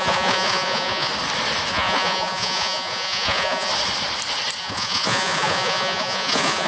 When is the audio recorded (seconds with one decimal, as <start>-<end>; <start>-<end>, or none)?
1.1-1.7; 3.7-4.6